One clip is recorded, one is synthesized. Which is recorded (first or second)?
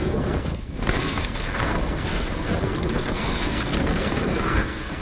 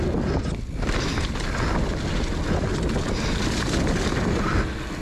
second